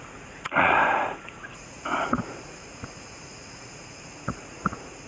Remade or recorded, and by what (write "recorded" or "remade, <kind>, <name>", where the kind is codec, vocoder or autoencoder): remade, vocoder, Vocos